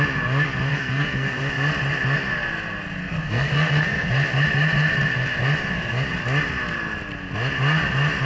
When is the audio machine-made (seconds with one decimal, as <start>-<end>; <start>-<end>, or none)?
0.7-1.4; 3.0-4.1